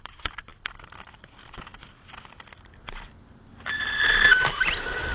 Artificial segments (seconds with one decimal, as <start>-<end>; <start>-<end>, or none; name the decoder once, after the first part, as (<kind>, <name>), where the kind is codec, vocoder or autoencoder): none